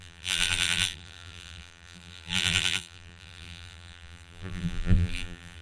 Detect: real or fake fake